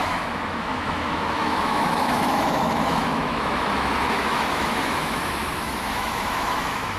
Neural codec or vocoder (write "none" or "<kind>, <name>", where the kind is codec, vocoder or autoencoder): autoencoder, DAC-VAE